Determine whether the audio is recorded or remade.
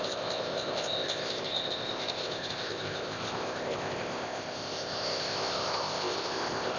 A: remade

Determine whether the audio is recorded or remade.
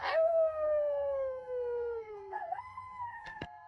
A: remade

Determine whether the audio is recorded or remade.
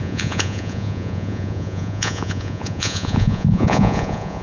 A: remade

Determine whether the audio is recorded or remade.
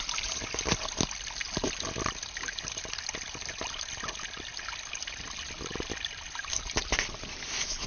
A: recorded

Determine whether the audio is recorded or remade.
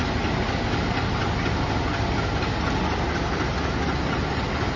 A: recorded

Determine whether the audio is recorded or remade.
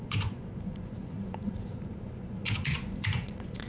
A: remade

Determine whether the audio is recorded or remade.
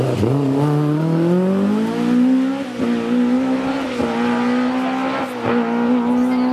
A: recorded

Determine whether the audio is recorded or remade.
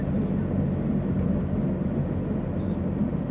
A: recorded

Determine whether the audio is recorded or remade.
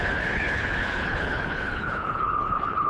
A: remade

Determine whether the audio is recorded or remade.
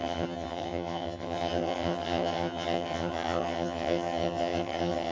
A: remade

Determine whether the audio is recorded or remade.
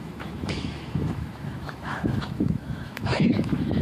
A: remade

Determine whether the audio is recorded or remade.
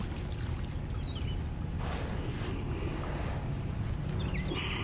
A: recorded